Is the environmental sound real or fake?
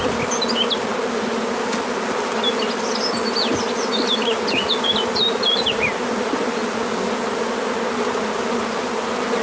real